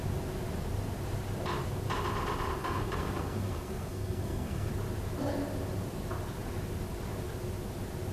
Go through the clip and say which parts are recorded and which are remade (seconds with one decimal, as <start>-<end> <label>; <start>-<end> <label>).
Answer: 0.0-2.6 recorded; 2.6-4.7 remade; 4.7-8.1 recorded